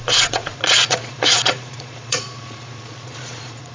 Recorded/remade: remade